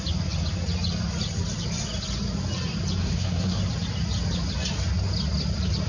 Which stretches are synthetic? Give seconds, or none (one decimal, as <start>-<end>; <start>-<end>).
3.0-3.6